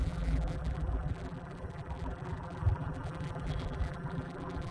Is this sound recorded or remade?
remade